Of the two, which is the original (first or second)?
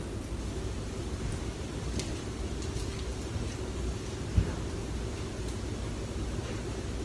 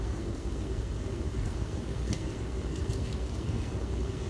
first